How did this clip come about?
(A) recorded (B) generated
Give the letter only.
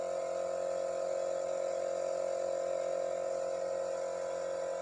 A